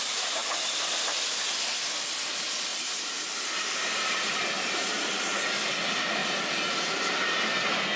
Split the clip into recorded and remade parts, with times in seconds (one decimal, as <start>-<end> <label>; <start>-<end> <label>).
0.0-2.7 recorded; 2.7-3.6 remade; 3.6-6.2 recorded; 6.2-7.0 remade; 7.0-8.0 recorded